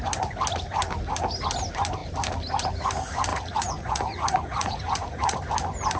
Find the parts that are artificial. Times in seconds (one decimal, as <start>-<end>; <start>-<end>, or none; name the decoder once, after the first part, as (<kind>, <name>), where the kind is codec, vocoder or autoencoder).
3.3-5.4 (vocoder, Vocos)

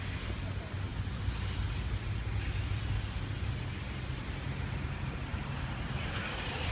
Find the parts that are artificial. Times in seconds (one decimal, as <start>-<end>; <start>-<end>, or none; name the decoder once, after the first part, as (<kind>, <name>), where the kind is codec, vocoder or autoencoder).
none

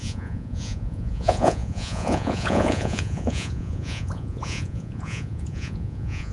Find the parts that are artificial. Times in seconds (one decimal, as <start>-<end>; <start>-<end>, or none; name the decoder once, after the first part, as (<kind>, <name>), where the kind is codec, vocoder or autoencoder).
0.0-6.3 (vocoder, Vocos)

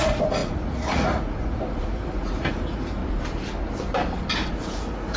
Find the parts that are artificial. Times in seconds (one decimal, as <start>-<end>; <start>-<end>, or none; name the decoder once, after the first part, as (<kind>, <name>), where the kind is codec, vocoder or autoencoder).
0.0-3.0 (vocoder, Vocos); 4.5-5.2

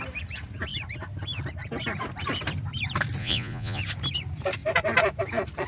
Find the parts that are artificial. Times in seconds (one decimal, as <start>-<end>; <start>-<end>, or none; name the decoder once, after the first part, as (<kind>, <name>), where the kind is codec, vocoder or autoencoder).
3.2-3.8 (vocoder, Vocos)